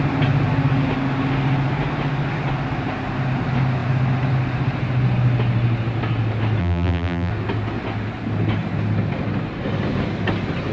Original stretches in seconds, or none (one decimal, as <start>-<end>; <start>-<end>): 0.0-6.6; 7.3-10.7